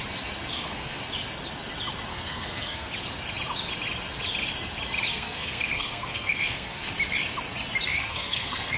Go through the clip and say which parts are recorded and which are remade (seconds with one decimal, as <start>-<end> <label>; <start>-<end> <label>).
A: 0.0-0.5 recorded; 0.5-1.0 remade; 1.0-2.1 recorded; 2.1-2.9 remade; 2.9-5.1 recorded; 5.1-6.9 remade; 6.9-7.9 recorded; 7.9-8.8 remade